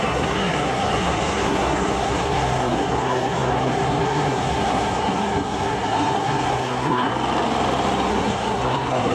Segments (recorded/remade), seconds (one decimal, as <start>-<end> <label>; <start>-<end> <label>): 0.0-7.1 remade; 7.1-8.1 recorded; 8.1-9.1 remade